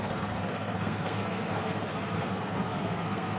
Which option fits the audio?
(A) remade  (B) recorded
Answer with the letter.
A